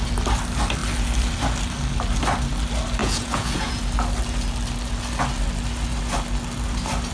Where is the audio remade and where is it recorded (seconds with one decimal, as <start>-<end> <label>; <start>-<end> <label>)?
0.0-3.0 recorded; 3.0-3.8 remade; 3.8-7.1 recorded